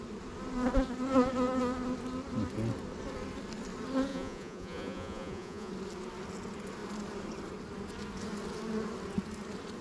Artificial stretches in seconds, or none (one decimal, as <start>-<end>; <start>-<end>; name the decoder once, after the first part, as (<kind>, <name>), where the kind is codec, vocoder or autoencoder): 4.1-5.7 (vocoder, Vocos)